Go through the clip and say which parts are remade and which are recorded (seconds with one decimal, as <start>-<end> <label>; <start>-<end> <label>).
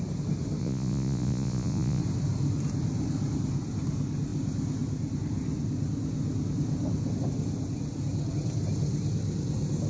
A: 0.0-0.6 recorded; 0.6-2.0 remade; 2.0-9.9 recorded